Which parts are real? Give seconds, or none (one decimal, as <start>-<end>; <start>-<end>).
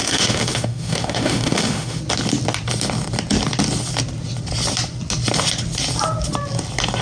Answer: 2.0-7.0